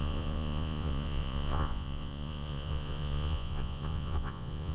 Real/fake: fake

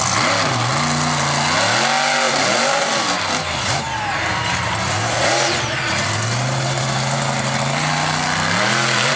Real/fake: real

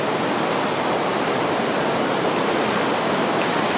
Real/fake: real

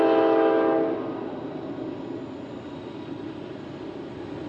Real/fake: real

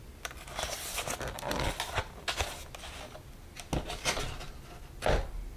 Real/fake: real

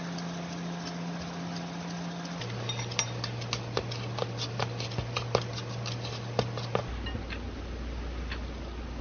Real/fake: real